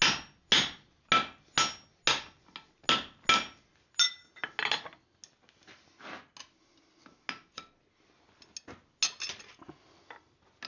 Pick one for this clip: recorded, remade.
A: recorded